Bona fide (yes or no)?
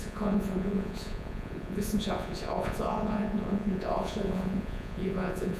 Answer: no